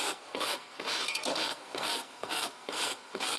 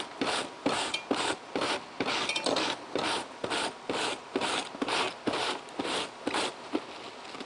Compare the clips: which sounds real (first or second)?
second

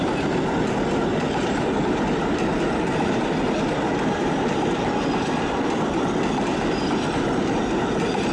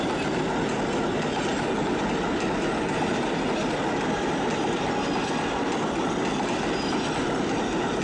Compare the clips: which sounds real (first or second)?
second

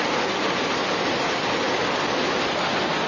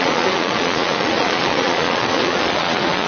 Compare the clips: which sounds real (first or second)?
first